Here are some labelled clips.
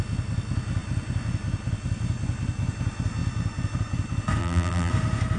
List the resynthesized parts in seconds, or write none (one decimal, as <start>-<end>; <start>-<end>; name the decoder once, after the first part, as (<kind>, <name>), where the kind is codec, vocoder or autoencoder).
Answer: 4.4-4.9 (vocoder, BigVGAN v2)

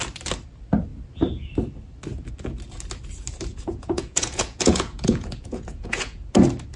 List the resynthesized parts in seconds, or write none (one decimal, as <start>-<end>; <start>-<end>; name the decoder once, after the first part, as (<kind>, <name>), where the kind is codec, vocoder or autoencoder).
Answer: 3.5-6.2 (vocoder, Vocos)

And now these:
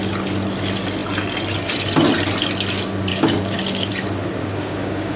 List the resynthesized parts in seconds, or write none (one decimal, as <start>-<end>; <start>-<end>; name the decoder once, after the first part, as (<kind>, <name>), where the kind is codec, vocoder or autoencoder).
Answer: 3.1-3.9 (codec, DAC); 4.4-5.2